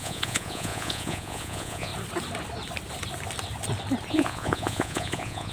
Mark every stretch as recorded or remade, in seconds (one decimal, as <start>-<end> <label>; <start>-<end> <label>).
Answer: 0.0-1.9 remade; 1.9-4.1 recorded; 4.1-5.5 remade